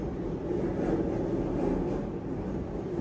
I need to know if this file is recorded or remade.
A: recorded